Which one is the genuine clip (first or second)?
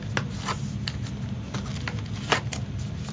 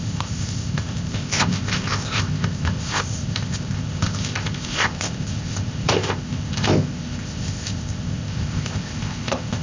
first